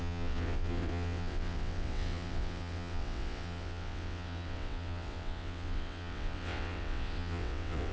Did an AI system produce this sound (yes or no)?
yes